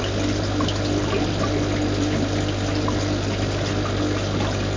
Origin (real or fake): real